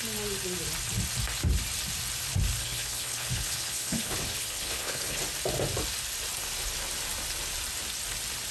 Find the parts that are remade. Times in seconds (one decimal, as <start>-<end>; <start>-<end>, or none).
2.6-5.2